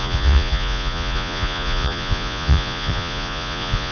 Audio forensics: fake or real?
fake